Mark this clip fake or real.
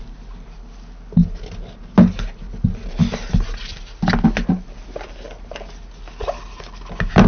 real